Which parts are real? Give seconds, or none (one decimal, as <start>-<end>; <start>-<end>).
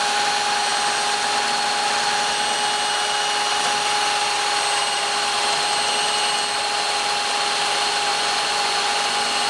0.0-8.1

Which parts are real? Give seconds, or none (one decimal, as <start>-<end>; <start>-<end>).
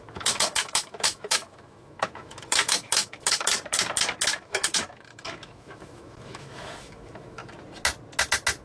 3.5-4.4; 7.4-8.6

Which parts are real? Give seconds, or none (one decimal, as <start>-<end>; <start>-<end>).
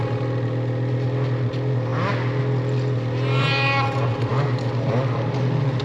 0.0-5.8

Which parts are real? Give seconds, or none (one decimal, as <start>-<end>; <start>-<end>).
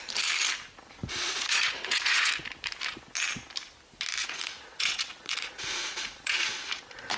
0.0-1.0; 2.3-4.2; 6.8-7.2